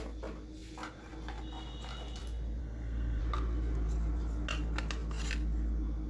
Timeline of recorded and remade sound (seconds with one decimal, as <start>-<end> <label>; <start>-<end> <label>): 0.0-2.6 recorded; 2.6-3.2 remade; 3.2-6.1 recorded